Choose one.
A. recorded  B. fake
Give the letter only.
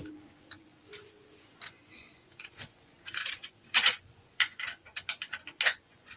B